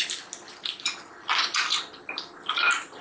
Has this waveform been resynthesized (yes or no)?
no